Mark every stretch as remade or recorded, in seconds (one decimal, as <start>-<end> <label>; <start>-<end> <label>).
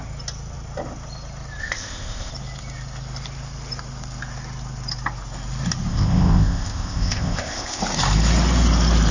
0.0-1.6 recorded; 1.6-2.3 remade; 2.3-5.9 recorded; 5.9-7.8 remade; 7.8-9.1 recorded